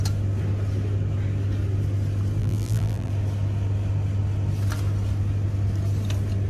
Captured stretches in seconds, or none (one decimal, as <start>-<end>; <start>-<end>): 0.0-2.4; 3.1-6.5